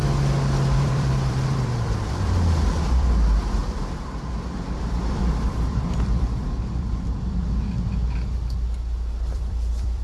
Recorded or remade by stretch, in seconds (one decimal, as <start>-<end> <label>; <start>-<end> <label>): 0.0-0.8 recorded; 0.8-3.6 remade; 3.6-4.8 recorded; 4.8-7.4 remade; 7.4-9.1 recorded; 9.1-10.0 remade